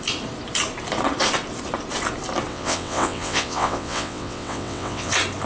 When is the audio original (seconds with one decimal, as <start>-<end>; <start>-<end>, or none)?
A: 0.0-2.5; 5.1-5.5